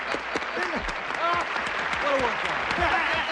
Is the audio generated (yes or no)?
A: no